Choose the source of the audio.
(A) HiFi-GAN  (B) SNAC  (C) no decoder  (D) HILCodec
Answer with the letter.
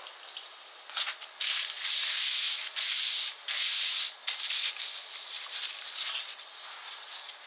C